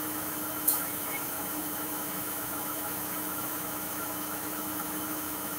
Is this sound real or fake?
fake